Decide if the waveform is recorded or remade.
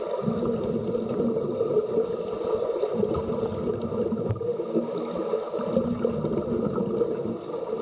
recorded